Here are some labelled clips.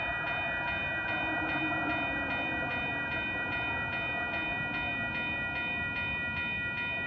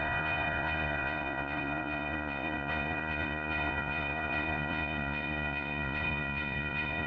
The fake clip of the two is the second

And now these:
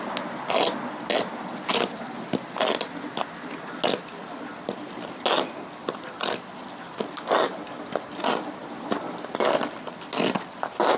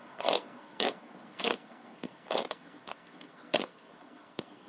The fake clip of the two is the second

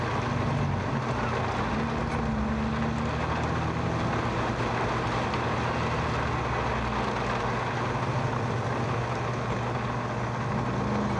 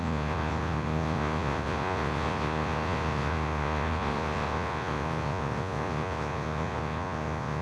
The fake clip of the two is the second